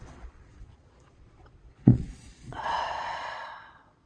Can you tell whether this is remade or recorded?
remade